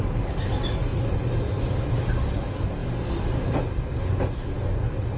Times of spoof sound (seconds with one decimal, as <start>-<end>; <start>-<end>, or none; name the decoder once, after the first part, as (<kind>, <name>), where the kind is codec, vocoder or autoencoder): none